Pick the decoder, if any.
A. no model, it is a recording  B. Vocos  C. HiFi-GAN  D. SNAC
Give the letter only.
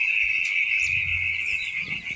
A